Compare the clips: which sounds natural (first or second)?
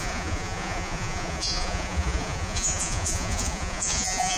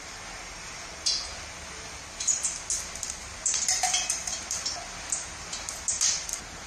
second